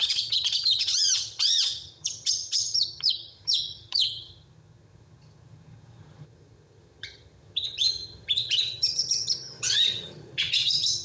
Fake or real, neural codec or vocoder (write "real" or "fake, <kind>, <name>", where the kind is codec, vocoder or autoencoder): fake, vocoder, HiFi-GAN